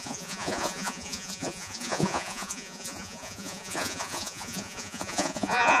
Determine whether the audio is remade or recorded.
remade